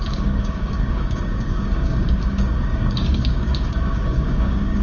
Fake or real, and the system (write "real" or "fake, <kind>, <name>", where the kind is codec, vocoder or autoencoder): fake, codec, DAC